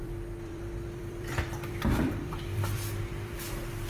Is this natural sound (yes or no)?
no